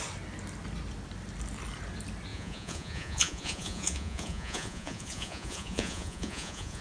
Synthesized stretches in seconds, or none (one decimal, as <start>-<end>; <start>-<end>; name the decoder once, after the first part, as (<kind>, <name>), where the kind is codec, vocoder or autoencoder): 2.3-6.8 (vocoder, Vocos)